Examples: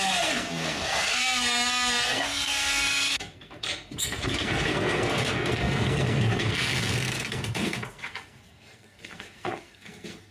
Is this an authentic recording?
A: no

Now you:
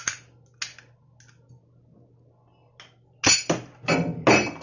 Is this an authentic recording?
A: yes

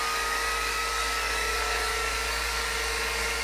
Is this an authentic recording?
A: no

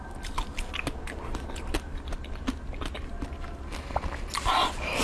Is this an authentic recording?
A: yes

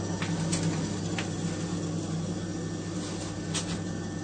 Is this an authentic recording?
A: yes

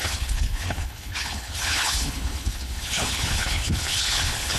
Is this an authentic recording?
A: no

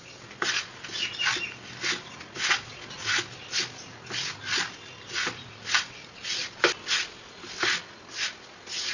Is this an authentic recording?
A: yes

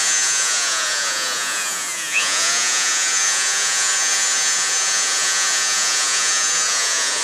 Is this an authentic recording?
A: no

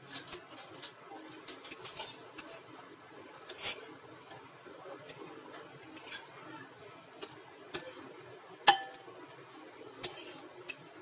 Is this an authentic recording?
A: yes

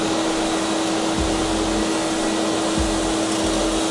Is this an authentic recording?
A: yes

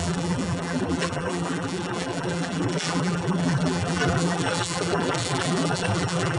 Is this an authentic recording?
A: no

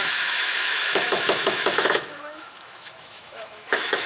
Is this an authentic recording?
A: no